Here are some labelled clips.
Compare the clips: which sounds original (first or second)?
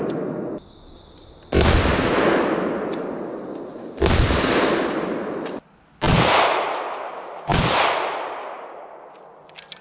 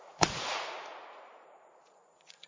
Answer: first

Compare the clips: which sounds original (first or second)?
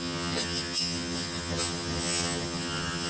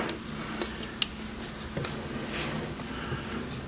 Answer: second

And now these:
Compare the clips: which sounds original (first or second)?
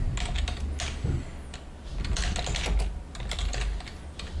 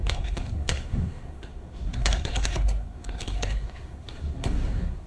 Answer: first